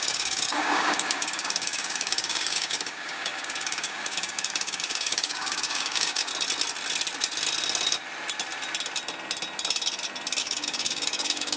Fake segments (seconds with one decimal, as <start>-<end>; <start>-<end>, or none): 0.0-6.3; 10.4-11.6